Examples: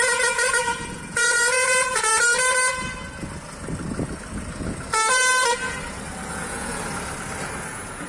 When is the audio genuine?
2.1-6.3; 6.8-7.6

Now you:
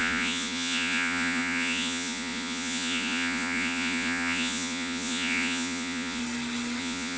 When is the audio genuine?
6.2-6.8

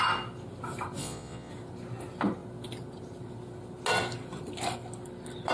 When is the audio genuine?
0.0-1.0; 1.5-5.5